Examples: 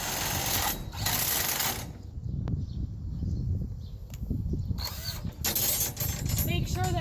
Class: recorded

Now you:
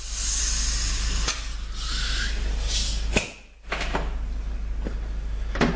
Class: recorded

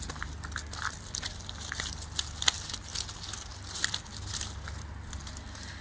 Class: recorded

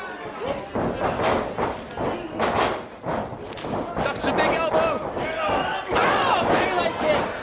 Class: recorded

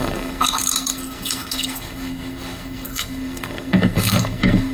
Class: remade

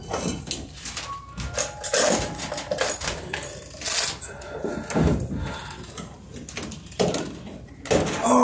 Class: recorded